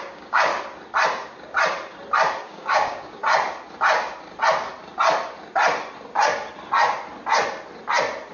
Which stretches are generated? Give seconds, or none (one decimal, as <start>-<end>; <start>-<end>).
0.0-0.5; 2.4-3.2